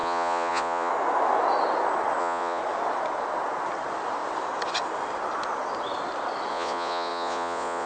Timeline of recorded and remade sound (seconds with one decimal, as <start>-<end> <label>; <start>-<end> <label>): 0.0-0.9 remade; 0.9-2.2 recorded; 2.2-2.6 remade; 2.6-6.5 recorded; 6.5-7.9 remade